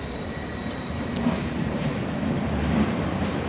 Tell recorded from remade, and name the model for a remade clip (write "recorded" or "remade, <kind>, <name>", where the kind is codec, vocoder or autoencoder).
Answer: remade, vocoder, BigVGAN v2